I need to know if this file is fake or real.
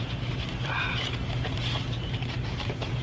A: real